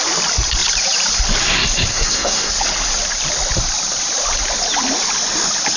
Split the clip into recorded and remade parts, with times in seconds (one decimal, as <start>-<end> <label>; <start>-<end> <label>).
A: 0.0-1.9 recorded; 1.9-2.5 remade; 2.5-5.8 recorded